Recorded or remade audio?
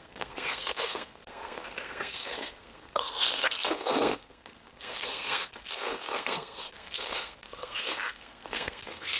remade